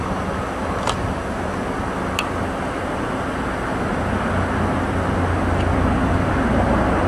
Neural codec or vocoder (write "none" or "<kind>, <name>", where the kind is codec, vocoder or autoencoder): none